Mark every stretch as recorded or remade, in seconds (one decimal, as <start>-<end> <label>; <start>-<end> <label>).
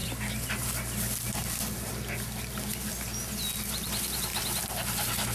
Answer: 0.0-5.3 recorded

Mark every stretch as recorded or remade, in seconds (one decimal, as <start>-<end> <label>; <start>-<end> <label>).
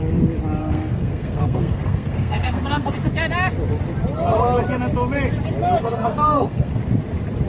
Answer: 0.0-0.6 recorded; 0.6-2.9 remade; 2.9-5.8 recorded; 5.8-6.8 remade; 6.8-7.5 recorded